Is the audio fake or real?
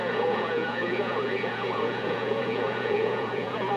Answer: fake